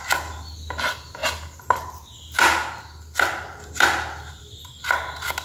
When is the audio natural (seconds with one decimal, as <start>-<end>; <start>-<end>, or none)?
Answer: 0.0-5.4